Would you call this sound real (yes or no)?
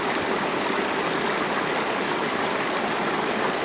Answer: yes